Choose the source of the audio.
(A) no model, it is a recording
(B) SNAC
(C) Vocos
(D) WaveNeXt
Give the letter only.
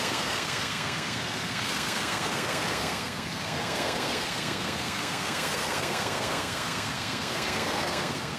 B